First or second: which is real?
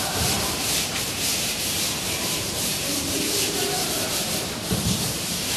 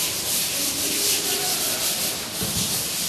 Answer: second